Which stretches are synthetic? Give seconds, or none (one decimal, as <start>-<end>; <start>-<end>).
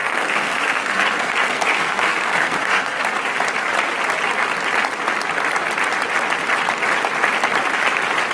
0.0-3.0